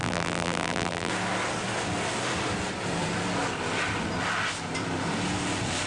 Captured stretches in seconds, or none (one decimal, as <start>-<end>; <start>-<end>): 1.1-5.9